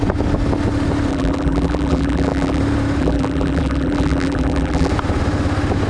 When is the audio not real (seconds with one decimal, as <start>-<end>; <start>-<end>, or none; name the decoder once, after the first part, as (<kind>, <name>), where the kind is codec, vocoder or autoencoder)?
1.1-2.6 (vocoder, BigVGAN v2); 3.0-4.9

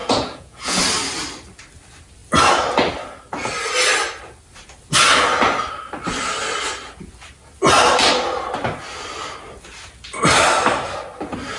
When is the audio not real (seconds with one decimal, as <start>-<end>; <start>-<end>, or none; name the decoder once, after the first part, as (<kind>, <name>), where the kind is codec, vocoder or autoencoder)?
0.0-0.8 (vocoder, Vocos)

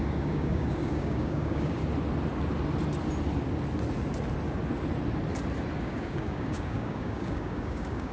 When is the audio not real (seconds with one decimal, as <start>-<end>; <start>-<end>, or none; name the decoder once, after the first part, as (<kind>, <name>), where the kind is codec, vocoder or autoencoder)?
0.0-1.8 (codec, DAC); 5.8-8.1

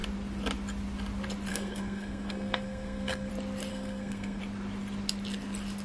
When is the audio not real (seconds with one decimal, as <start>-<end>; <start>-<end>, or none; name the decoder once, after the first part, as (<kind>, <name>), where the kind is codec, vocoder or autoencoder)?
1.5-3.3 (codec, SNAC); 3.7-4.4

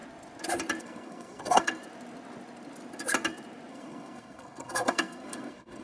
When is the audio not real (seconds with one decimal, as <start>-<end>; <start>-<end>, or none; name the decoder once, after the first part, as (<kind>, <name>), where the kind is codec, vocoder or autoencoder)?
0.8-1.8 (codec, SNAC); 3.7-5.8